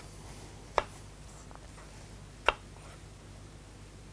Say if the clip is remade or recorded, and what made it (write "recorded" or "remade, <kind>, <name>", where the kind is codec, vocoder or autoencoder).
recorded